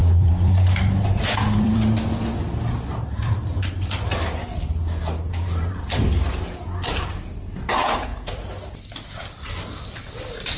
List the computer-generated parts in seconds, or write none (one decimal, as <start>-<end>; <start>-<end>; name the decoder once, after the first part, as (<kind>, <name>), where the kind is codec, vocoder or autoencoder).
0.0-1.8 (vocoder, BigVGAN v2); 2.9-3.5; 5.0-5.8; 8.1-10.0